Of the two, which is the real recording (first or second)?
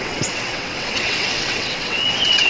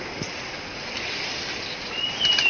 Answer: second